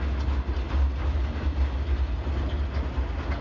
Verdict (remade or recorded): recorded